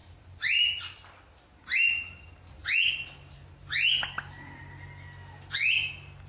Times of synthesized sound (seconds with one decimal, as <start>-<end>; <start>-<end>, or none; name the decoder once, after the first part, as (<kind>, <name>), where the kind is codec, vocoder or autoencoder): 0.0-0.8 (vocoder, BigVGAN v2)